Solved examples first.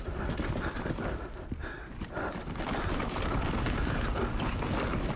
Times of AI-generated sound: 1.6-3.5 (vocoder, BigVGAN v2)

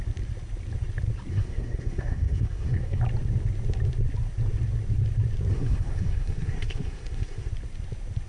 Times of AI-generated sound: 1.3-3.0 (codec, SNAC); 5.5-7.5

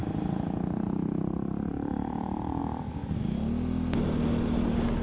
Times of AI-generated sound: 0.0-2.6 (vocoder, BigVGAN v2)

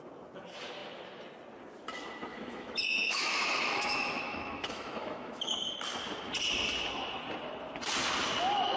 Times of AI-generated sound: 2.3-5.7 (autoencoder, DAC-VAE)

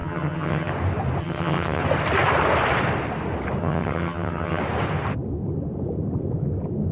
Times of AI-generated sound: 0.0-0.7 (vocoder, HiFi-GAN); 1.2-1.8; 3.6-4.6

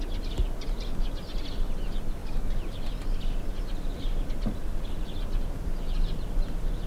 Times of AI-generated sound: none